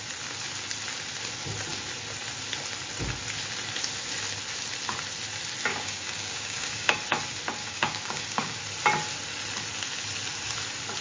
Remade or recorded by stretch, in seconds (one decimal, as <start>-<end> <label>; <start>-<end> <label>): 0.0-5.7 recorded; 5.7-6.9 remade; 6.9-7.6 recorded; 7.6-8.6 remade; 8.6-11.0 recorded